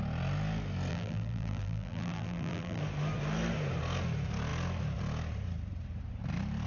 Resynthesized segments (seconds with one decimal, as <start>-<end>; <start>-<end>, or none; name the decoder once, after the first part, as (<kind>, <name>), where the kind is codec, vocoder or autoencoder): 0.9-2.8 (vocoder, BigVGAN v2)